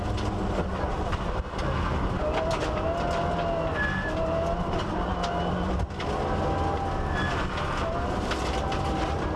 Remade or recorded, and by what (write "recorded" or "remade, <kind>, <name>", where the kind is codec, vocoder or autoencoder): recorded